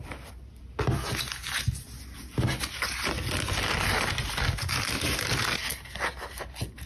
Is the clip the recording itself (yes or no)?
yes